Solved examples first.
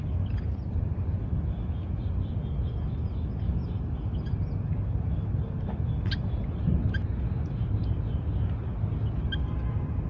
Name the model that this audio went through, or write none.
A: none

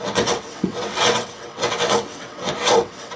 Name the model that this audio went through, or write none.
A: vocoder, WaveNeXt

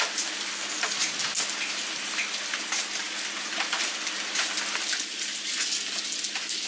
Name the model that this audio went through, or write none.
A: none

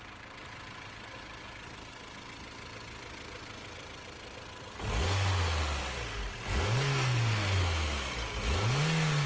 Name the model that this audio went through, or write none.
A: none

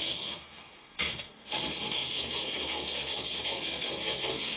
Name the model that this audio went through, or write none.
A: codec, SNAC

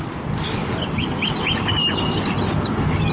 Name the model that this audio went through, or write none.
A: none